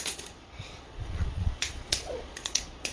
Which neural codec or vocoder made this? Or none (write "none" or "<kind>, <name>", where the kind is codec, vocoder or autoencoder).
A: vocoder, Vocos